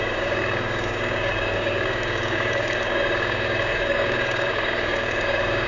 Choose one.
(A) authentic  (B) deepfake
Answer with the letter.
B